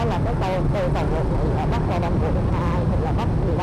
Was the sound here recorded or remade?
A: recorded